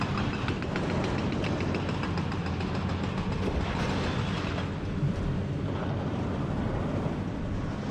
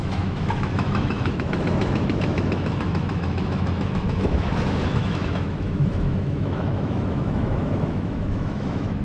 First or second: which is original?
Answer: first